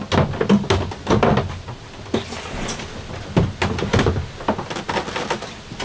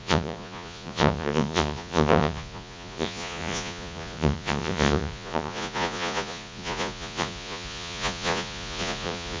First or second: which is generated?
second